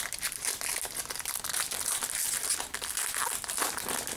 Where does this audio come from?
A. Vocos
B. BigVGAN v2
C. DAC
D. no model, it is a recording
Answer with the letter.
D